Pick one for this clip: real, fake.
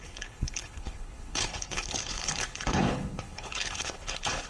fake